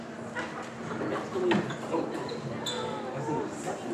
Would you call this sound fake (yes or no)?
no